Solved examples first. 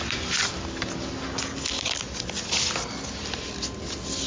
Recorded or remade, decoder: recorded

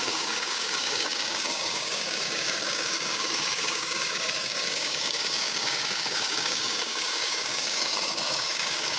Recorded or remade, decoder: remade, codec, DAC